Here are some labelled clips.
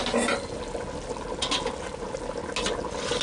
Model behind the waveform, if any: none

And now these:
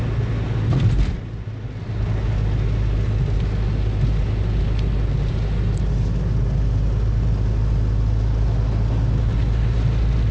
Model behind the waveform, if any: none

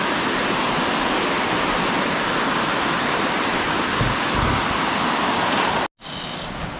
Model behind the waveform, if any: none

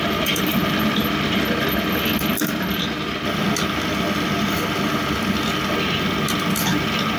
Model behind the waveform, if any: none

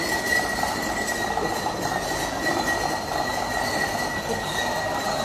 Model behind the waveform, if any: none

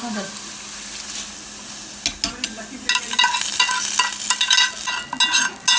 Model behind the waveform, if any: none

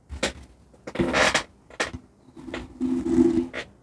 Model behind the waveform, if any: none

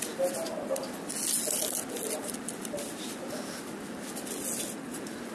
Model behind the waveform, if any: none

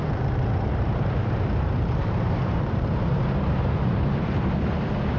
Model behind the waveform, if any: vocoder, BigVGAN v2